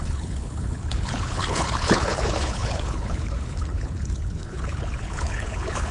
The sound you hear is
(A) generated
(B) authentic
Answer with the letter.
A